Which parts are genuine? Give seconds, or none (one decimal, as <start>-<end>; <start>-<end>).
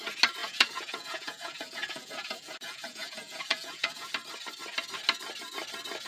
0.0-0.4; 4.1-6.1